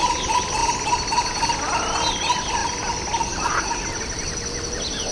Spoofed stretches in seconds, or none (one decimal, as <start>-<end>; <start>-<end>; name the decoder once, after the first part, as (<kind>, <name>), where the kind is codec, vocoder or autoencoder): none